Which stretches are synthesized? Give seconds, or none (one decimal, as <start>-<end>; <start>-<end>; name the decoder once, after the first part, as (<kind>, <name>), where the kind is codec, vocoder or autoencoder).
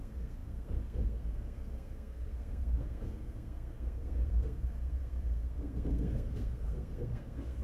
0.0-7.6 (codec, SNAC)